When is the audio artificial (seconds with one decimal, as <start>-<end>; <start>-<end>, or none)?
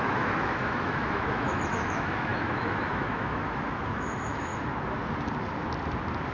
0.0-4.5